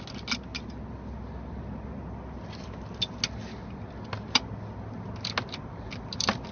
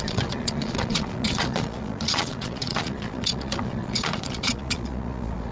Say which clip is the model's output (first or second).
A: second